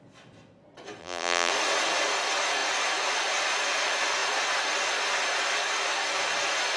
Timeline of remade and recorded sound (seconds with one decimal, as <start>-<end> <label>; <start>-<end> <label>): 0.0-1.0 recorded; 1.0-1.5 remade; 1.5-6.8 recorded